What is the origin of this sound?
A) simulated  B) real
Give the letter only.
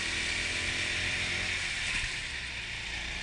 B